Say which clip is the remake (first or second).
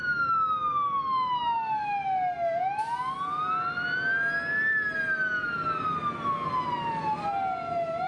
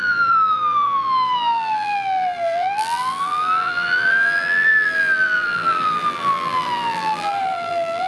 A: second